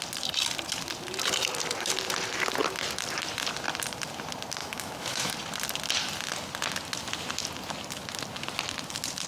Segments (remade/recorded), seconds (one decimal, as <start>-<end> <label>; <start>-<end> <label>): 0.0-4.6 recorded; 4.6-5.3 remade; 5.3-9.3 recorded